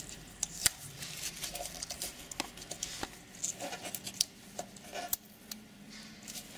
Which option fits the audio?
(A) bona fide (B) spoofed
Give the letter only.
A